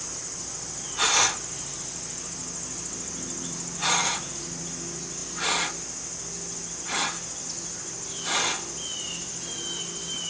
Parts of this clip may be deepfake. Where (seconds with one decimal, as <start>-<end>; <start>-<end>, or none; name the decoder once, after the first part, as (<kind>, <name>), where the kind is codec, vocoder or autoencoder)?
none